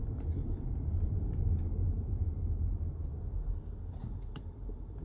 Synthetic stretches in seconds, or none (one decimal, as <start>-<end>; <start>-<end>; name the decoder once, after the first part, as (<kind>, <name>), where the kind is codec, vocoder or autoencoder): 0.0-5.0 (vocoder, BigVGAN v2)

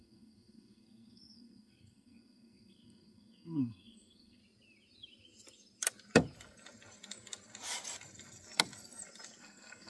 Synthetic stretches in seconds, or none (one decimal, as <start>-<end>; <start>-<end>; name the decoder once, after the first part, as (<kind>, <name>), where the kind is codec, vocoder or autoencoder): 0.0-4.4 (codec, SNAC); 9.4-9.9